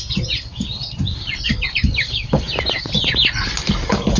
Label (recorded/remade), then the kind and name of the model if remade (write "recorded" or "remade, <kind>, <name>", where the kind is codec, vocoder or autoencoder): recorded